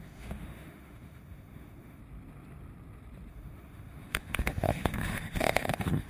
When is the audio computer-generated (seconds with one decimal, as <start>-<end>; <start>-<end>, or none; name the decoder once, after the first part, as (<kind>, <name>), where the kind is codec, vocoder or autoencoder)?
0.0-2.0 (autoencoder, DAC-VAE); 3.3-6.1